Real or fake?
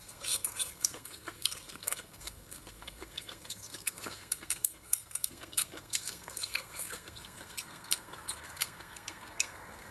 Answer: fake